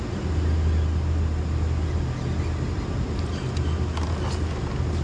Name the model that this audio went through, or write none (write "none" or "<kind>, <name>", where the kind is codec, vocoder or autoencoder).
none